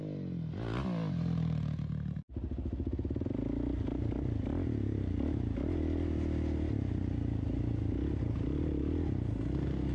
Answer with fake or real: real